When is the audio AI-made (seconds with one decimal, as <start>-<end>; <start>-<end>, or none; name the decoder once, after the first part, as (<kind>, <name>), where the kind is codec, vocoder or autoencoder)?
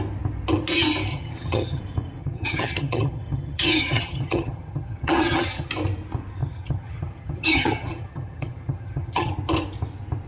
1.1-1.8 (vocoder, HiFi-GAN); 2.2-5.7; 6.4-9.3